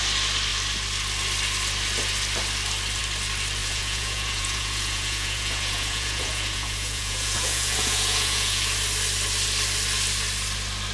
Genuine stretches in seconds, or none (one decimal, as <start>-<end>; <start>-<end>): 0.0-3.6; 8.6-10.9